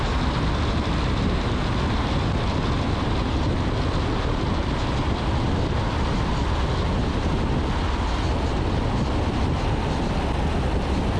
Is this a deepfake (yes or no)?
no